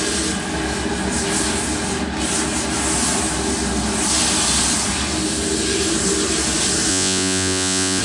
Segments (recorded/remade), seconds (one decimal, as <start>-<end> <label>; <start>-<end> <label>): 0.0-6.9 recorded; 6.9-8.0 remade

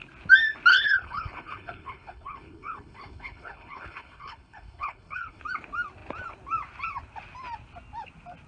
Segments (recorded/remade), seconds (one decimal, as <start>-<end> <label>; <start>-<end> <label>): 0.0-0.7 recorded; 0.7-5.4 remade; 5.4-8.5 recorded

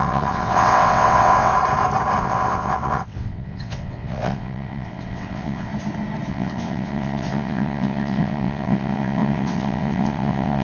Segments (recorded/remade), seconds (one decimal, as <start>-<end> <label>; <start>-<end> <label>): 0.0-1.5 remade; 1.5-2.2 recorded; 2.2-5.7 remade; 5.7-6.3 recorded; 6.3-10.6 remade

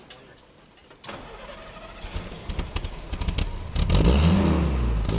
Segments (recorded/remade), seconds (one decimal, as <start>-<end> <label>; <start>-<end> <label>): 0.0-5.2 recorded